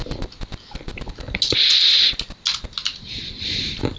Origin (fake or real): real